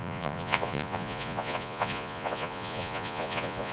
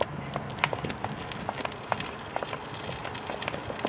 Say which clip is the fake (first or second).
first